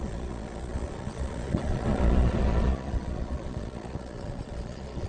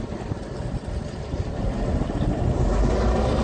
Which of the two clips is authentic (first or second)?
second